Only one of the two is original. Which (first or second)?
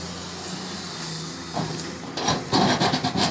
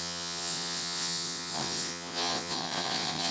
first